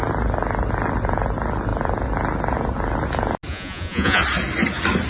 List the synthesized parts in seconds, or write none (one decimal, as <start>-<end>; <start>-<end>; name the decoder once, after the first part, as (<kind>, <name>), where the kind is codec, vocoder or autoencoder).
3.5-4.2 (vocoder, Vocos)